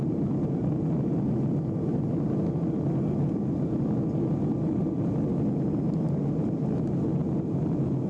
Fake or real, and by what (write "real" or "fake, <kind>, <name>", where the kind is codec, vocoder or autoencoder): real